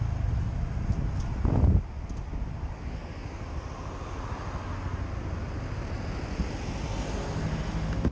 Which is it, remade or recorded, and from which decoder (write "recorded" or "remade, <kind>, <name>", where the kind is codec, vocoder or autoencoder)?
recorded